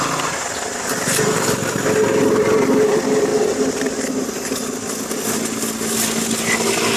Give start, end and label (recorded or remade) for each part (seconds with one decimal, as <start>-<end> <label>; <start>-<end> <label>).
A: 0.0-7.0 recorded